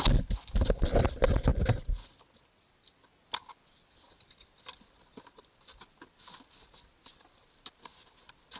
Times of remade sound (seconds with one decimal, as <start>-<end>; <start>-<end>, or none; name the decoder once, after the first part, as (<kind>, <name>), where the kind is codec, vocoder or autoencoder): none